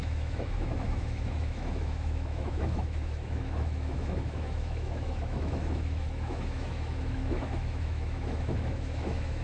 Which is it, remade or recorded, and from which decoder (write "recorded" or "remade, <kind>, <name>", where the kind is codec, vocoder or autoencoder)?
remade, autoencoder, DAC-VAE